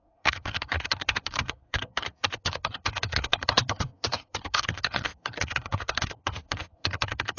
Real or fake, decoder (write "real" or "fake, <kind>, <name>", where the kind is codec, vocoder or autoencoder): fake, codec, SNAC